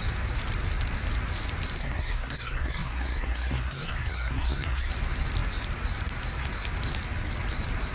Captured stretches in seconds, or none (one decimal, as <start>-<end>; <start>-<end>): 0.0-1.8; 4.9-7.9